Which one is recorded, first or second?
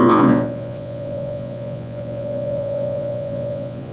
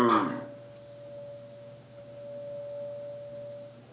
second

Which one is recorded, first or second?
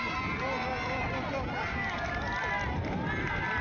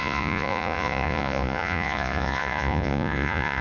first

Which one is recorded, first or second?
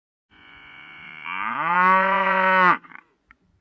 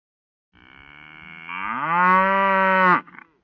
second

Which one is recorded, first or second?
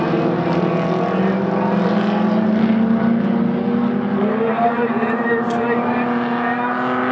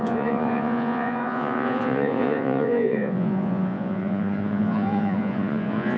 first